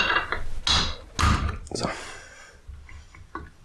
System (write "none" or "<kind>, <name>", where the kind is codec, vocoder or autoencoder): none